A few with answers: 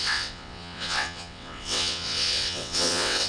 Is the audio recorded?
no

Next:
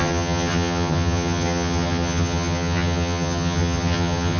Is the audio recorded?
no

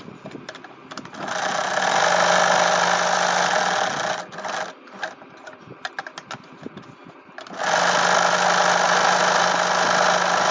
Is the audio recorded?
yes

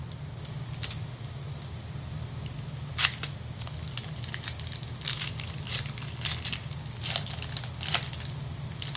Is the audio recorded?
yes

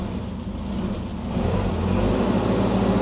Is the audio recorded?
yes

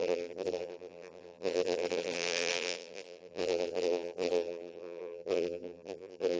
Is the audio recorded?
no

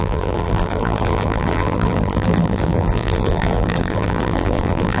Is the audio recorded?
no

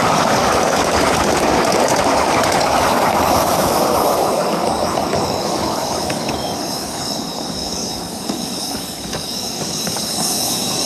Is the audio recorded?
no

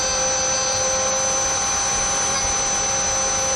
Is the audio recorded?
yes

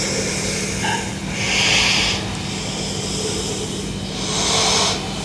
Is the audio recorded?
yes